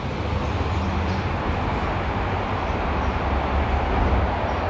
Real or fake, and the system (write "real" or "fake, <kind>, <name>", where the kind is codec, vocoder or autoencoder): real